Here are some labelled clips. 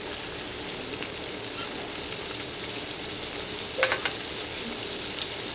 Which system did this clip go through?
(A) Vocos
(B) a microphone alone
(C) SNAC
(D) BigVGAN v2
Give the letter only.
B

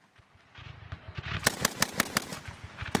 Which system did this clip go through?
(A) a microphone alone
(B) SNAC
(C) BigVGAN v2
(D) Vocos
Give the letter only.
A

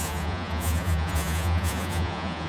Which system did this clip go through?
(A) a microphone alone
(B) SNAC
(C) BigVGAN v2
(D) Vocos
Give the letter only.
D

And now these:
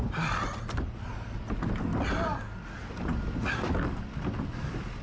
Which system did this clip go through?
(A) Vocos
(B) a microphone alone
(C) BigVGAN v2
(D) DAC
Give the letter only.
B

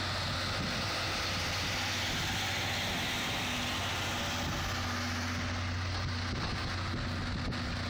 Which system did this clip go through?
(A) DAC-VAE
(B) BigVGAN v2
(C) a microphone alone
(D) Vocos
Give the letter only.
C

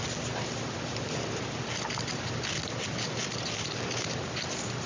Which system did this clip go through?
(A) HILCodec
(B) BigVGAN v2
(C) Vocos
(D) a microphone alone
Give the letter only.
D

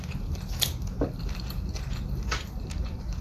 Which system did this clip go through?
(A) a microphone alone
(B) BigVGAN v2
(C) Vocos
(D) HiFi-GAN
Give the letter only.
B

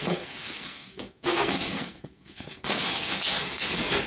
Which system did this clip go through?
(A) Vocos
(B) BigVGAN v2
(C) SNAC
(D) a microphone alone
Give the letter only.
C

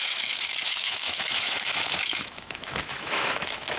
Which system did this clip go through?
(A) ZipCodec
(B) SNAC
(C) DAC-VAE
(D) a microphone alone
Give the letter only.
C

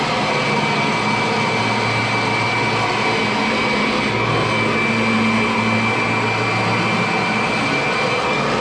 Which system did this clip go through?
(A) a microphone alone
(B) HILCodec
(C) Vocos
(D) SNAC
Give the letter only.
A